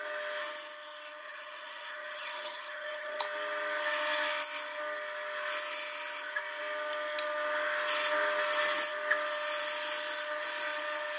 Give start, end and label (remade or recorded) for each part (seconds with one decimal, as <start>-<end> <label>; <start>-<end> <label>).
0.0-1.2 recorded; 1.2-3.2 remade; 3.2-11.2 recorded

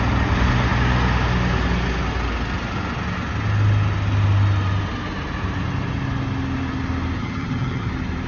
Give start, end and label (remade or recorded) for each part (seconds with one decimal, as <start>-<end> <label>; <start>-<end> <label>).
0.0-7.2 recorded; 7.2-7.9 remade; 7.9-8.3 recorded